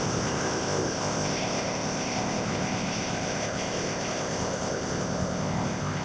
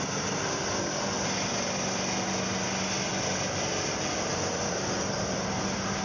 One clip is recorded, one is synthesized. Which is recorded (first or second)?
second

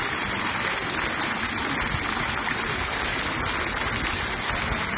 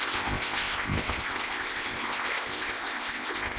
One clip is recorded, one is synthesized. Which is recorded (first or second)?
first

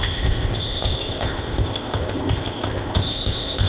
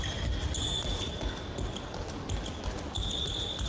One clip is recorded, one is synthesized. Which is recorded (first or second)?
second